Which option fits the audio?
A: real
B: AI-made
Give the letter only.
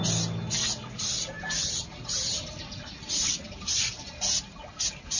A